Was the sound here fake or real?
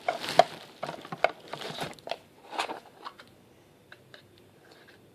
real